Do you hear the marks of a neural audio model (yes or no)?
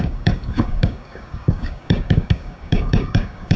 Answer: yes